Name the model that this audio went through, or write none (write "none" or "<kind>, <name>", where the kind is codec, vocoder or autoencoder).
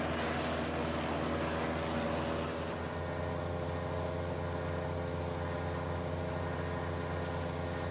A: none